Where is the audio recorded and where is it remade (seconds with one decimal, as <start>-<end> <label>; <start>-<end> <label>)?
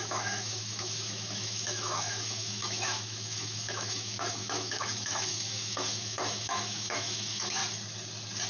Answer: 0.0-7.6 remade; 7.6-8.5 recorded